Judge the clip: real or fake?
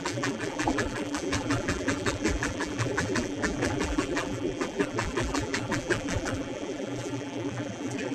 fake